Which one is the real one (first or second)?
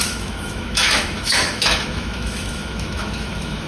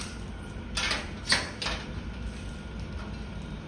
second